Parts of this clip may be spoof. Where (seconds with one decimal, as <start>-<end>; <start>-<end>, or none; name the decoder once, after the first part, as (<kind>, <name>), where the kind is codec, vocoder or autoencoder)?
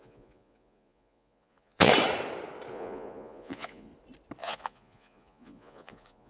0.0-1.9 (vocoder, Vocos); 2.7-3.9; 4.4-6.3